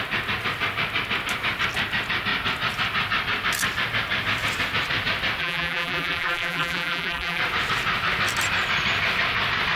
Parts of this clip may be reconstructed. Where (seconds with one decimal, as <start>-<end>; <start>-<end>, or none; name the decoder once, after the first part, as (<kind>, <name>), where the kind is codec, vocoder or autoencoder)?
5.4-7.4 (vocoder, BigVGAN v2)